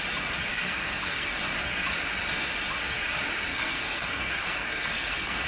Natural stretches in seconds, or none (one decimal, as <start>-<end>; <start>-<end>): 0.0-0.5; 1.4-3.5